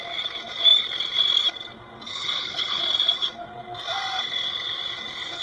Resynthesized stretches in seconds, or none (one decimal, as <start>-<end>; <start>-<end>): 2.1-2.8